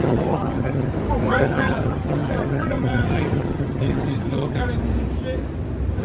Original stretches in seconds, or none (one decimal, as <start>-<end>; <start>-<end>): 0.9-1.4; 4.6-6.0